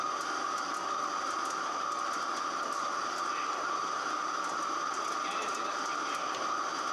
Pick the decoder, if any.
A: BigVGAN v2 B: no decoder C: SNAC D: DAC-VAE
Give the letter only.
B